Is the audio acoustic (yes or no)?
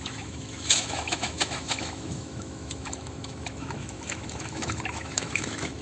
no